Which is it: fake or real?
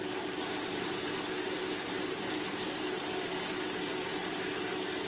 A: real